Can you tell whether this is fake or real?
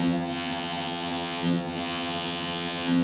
fake